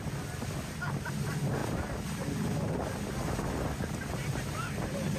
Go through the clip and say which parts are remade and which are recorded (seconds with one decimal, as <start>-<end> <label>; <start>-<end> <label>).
0.0-5.2 recorded